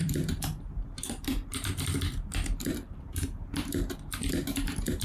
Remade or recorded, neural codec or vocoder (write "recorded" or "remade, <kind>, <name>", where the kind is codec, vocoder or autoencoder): remade, vocoder, BigVGAN v2